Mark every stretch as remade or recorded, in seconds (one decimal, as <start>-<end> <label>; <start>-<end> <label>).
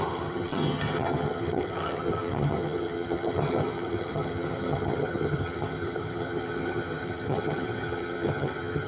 0.0-8.9 remade